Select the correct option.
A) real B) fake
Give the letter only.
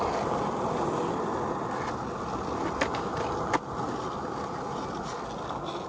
A